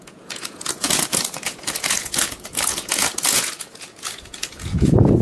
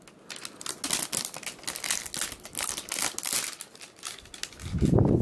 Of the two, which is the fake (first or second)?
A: first